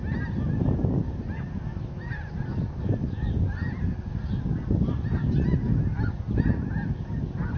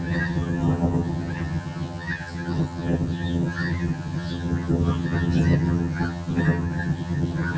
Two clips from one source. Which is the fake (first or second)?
second